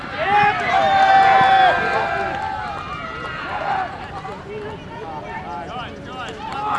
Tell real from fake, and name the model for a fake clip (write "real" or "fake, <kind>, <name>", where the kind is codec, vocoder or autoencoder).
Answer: real